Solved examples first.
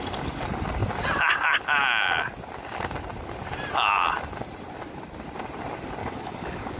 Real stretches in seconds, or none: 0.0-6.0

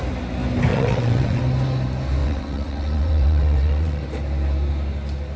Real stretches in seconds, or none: 0.0-0.7; 1.4-2.2; 4.0-5.4

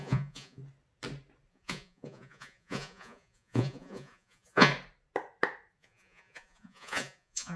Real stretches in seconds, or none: 0.6-1.5; 4.7-5.8

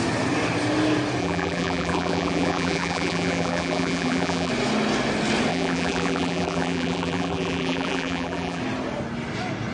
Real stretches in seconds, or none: 0.0-1.2; 4.5-5.5; 8.6-9.7